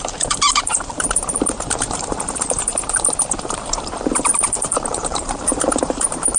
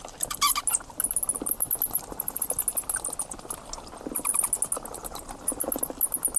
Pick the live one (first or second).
second